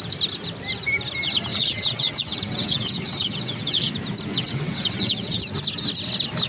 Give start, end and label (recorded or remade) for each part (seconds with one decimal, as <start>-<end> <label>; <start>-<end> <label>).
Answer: 0.0-1.5 recorded; 1.5-3.9 remade; 3.9-4.3 recorded; 4.3-5.4 remade; 5.4-6.5 recorded

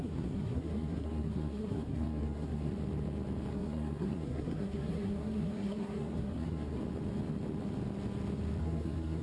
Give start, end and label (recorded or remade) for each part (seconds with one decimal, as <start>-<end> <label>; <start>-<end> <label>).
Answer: 0.0-2.7 remade; 2.7-3.5 recorded; 3.5-6.8 remade; 6.8-8.6 recorded; 8.6-9.2 remade

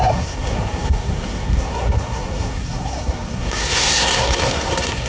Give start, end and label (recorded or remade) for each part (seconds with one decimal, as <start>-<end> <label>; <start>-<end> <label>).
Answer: 0.0-5.1 remade

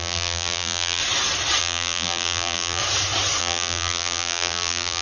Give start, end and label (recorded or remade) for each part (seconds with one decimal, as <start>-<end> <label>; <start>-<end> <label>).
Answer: 0.0-1.0 remade; 1.0-1.6 recorded; 1.6-2.8 remade; 2.8-3.4 recorded; 3.4-5.0 remade

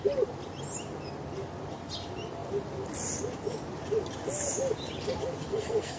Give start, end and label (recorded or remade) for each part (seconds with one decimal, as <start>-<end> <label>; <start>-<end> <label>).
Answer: 0.0-5.4 recorded; 5.4-6.0 remade

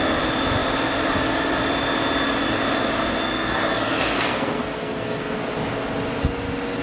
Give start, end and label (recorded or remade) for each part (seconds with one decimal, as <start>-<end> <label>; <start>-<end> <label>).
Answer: 0.0-3.2 recorded; 3.2-5.4 remade; 5.4-6.8 recorded

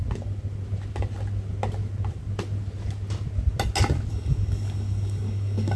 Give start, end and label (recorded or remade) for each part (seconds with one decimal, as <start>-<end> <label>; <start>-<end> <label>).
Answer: 0.0-4.1 recorded; 4.1-5.8 remade

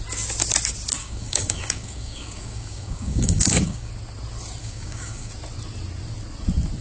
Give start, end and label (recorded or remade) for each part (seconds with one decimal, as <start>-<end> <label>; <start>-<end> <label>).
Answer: 0.0-1.0 recorded; 1.0-3.9 remade; 3.9-4.6 recorded; 4.6-5.3 remade; 5.3-6.8 recorded